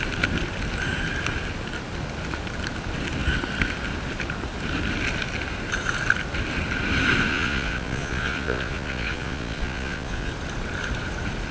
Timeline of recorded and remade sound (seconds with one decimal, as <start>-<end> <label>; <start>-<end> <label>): 0.0-7.3 recorded; 7.3-10.3 remade; 10.3-11.5 recorded